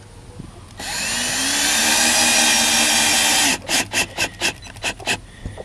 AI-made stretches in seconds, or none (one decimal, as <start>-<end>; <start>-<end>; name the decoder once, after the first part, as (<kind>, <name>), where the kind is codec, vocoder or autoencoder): none